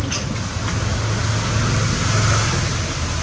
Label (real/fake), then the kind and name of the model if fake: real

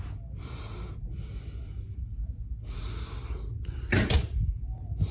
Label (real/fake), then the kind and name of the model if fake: real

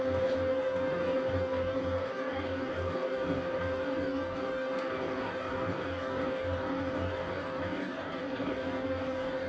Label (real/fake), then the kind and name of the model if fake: fake, codec, DAC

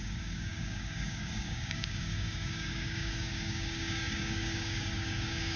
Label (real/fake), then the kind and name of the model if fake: fake, codec, DAC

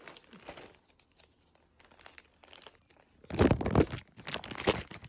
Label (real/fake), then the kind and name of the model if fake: real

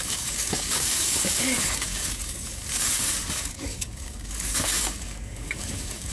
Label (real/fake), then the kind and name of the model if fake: fake, codec, DAC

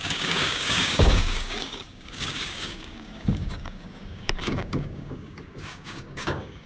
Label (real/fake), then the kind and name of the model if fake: fake, codec, DAC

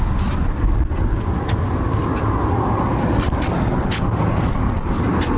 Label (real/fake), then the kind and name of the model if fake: real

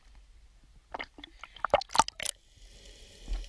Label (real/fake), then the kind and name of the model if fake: real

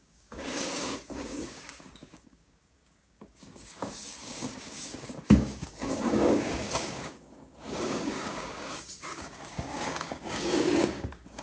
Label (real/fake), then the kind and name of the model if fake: fake, codec, DAC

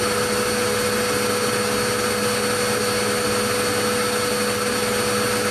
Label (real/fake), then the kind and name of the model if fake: real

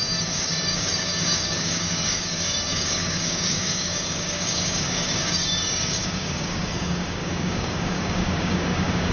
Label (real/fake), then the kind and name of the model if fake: fake, codec, DAC